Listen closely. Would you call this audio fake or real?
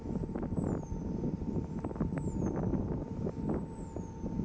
real